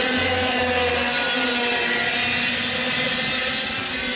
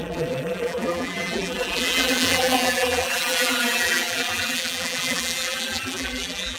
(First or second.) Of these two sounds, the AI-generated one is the second